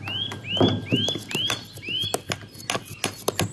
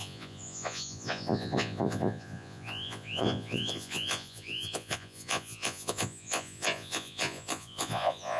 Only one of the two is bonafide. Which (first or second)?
first